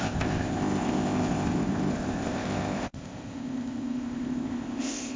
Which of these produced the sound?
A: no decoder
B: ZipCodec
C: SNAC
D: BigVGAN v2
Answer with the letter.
B